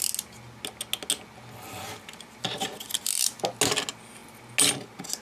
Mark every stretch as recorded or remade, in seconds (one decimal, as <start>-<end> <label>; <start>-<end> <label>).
0.0-5.2 recorded